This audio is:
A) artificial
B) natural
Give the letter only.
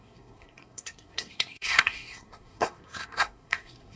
A